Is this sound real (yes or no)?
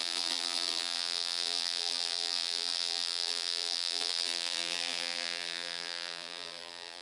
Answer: no